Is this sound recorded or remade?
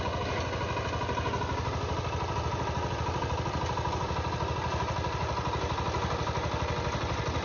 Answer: recorded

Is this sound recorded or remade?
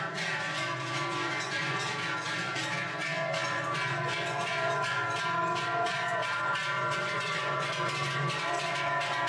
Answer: remade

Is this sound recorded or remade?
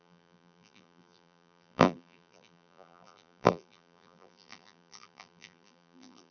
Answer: remade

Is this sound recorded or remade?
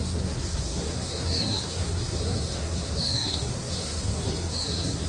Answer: remade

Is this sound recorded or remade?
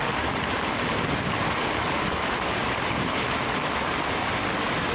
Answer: recorded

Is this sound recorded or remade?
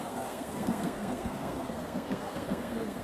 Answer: remade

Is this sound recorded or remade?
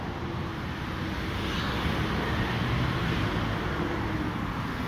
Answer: recorded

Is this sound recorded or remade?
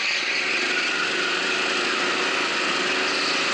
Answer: recorded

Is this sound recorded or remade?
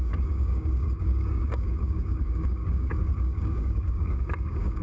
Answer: remade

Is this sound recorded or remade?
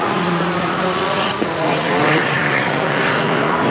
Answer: remade